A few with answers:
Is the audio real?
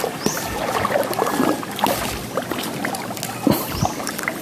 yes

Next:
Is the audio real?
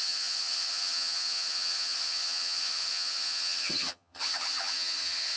no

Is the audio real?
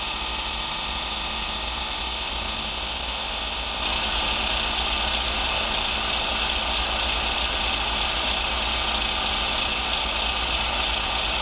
yes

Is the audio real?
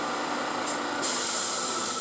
yes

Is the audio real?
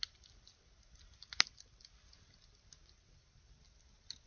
yes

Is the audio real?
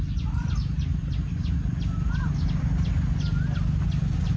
yes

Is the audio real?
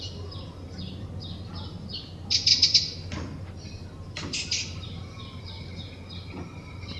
yes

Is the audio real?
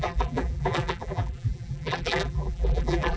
no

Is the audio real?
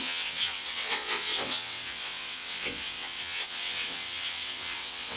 no